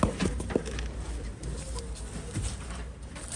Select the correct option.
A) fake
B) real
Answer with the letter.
B